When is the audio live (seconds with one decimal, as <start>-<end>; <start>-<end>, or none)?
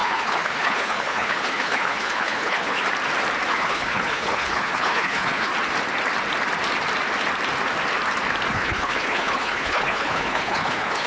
2.8-3.5; 5.5-8.5